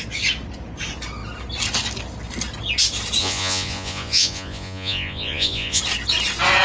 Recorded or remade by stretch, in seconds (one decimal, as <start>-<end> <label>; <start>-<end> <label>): 0.0-3.2 recorded; 3.2-5.8 remade; 5.8-6.6 recorded